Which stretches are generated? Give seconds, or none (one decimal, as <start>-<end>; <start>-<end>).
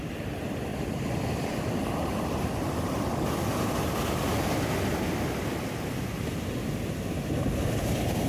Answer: 0.7-1.6